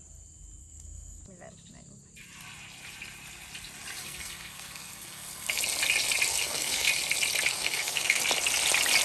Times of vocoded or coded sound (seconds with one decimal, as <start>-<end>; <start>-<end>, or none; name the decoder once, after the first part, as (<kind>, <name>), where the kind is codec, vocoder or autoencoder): 0.6-1.2 (codec, SNAC); 4.0-5.6; 6.3-6.9; 7.5-8.2